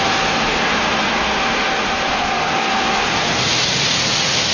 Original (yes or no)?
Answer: yes